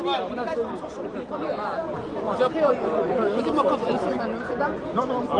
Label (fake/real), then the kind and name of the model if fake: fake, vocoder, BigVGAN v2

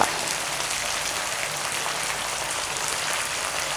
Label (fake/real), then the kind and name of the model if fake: fake, vocoder, BigVGAN v2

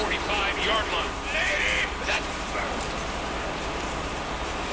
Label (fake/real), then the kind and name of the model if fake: fake, vocoder, BigVGAN v2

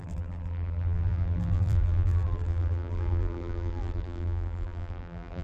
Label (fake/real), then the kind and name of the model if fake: fake, vocoder, BigVGAN v2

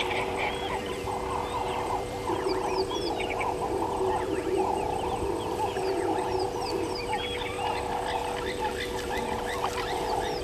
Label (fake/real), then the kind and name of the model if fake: fake, vocoder, BigVGAN v2